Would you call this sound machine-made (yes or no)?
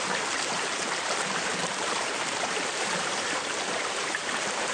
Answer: yes